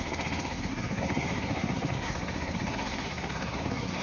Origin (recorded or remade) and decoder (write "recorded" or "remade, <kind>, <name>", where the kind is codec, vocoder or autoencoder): remade, codec, SNAC